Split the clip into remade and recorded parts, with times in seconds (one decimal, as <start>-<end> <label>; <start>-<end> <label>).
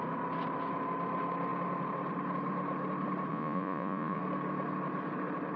0.0-3.3 recorded; 3.3-4.2 remade; 4.2-5.6 recorded